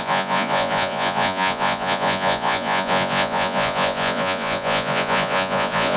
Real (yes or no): no